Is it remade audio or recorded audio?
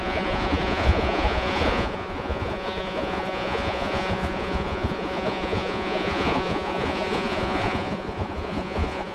remade